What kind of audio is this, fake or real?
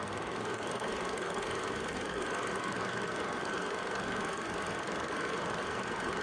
fake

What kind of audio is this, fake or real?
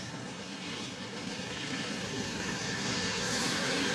fake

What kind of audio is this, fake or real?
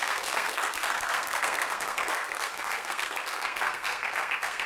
fake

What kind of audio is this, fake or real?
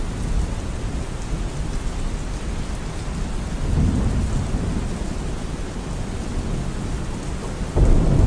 real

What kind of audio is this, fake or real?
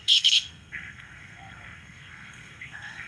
fake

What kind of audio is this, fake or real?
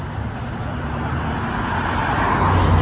real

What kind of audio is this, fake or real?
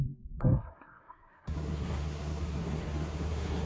fake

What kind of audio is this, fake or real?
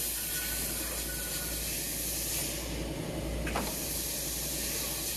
real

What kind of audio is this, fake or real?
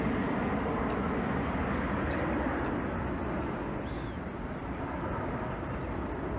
real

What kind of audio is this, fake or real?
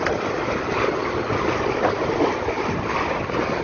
real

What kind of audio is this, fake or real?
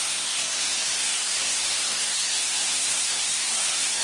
fake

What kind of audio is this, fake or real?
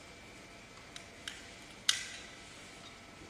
real